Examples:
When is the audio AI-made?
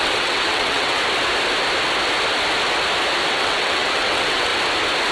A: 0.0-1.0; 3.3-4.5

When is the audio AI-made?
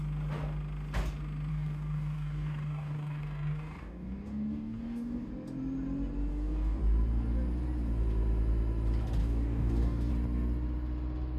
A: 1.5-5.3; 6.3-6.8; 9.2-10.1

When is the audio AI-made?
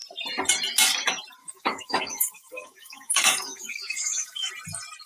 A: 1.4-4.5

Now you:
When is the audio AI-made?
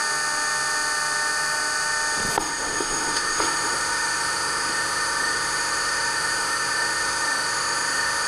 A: 2.4-8.3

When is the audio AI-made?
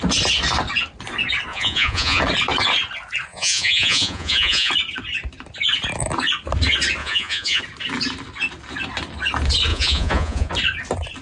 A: 1.5-2.2; 3.3-4.7; 7.0-7.6; 9.7-10.5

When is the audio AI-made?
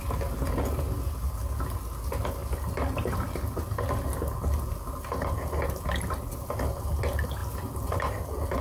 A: none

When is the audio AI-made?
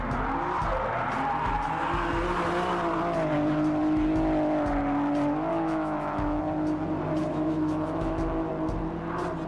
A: 5.5-6.4; 7.3-8.5